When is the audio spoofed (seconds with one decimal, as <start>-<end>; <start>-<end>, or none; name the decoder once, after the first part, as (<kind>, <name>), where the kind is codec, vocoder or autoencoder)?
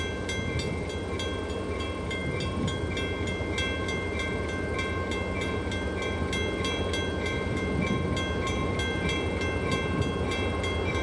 none